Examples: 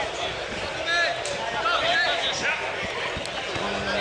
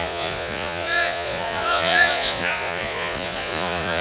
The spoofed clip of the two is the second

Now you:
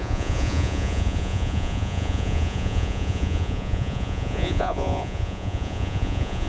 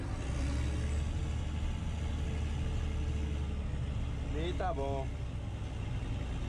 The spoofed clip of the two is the first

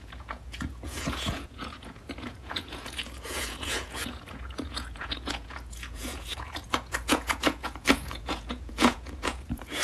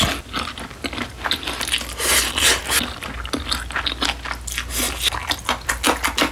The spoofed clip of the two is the first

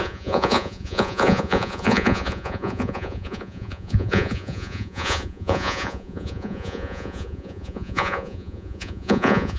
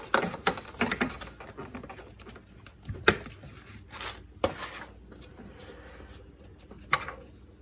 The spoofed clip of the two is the first